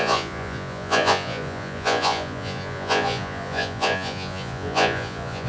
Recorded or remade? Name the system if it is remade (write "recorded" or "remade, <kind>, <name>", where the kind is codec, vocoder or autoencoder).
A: remade, vocoder, Vocos